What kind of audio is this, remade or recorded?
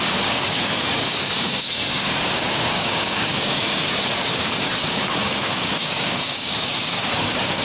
remade